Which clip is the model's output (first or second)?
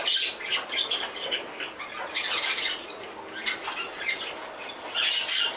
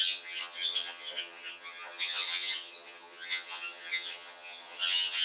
second